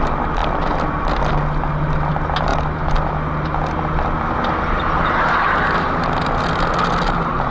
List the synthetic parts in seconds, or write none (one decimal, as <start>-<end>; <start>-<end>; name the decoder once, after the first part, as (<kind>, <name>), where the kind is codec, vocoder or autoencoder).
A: none